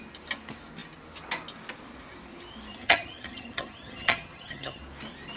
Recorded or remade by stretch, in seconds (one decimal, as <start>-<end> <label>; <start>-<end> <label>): 0.0-2.7 recorded; 2.7-4.8 remade; 4.8-5.4 recorded